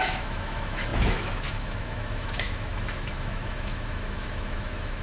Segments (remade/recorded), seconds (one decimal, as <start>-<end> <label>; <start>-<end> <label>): 0.0-5.0 remade